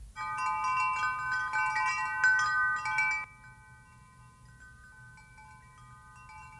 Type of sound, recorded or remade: recorded